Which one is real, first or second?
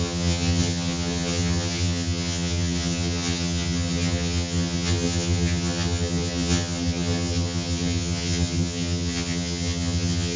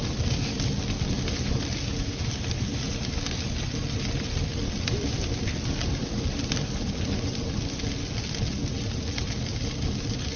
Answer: second